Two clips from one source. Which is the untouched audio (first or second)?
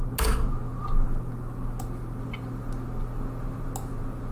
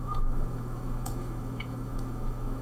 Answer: first